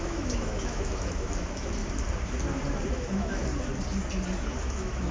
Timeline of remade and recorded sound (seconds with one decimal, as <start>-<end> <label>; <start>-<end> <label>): 0.0-1.8 remade; 1.8-2.9 recorded; 2.9-3.5 remade; 3.5-4.6 recorded; 4.6-5.1 remade